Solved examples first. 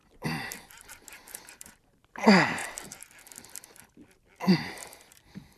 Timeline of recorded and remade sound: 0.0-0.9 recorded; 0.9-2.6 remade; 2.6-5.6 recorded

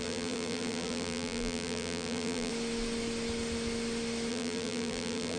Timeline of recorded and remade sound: 0.0-2.5 remade; 2.5-4.3 recorded; 4.3-5.4 remade